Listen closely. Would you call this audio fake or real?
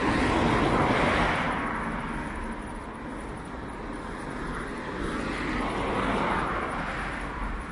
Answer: real